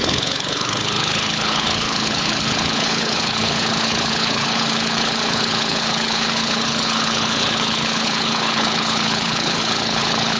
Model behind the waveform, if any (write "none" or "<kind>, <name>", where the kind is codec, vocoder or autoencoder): codec, HILCodec